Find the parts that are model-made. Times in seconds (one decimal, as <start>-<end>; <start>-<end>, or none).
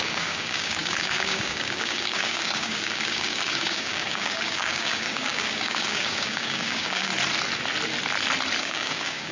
0.0-7.1; 8.6-9.3